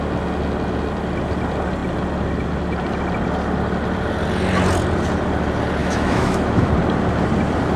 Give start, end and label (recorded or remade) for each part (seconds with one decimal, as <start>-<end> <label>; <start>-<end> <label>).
0.0-5.8 recorded; 5.8-6.7 remade; 6.7-7.8 recorded